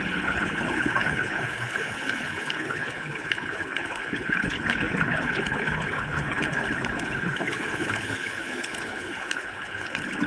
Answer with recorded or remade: remade